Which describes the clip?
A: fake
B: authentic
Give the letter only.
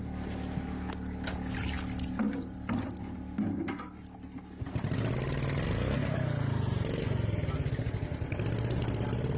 B